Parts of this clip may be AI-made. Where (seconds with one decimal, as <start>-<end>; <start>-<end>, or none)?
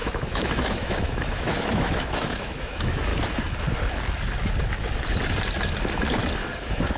0.0-3.1; 6.6-7.0